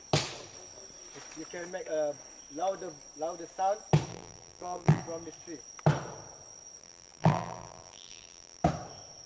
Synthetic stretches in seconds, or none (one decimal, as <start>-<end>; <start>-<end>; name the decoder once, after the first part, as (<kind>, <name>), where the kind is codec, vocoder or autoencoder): 4.1-5.0 (vocoder, BigVGAN v2); 6.8-8.6